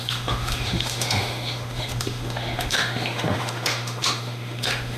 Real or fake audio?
fake